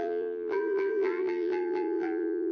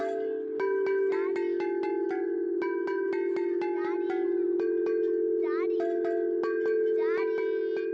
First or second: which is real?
second